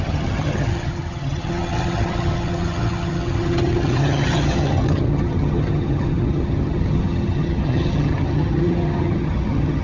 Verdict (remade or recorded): remade